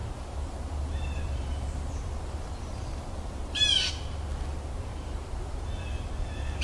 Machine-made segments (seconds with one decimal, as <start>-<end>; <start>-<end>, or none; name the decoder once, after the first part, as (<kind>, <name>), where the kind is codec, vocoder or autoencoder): 0.0-3.9 (vocoder, BigVGAN v2); 4.9-5.6